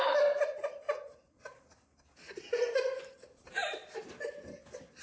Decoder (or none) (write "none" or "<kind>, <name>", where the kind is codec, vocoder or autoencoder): none